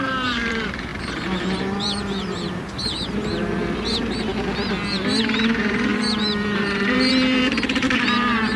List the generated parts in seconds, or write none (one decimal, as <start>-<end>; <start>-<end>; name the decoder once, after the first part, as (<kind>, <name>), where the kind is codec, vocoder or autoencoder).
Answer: 0.0-4.3 (vocoder, BigVGAN v2); 5.2-8.6